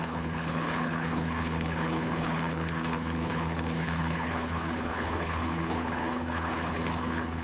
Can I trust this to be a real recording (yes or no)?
no